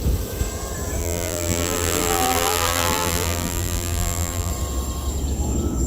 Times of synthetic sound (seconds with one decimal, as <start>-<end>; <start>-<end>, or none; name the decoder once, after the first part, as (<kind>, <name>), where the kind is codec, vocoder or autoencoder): 1.0-4.5 (vocoder, BigVGAN v2)